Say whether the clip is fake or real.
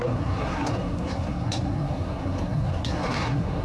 fake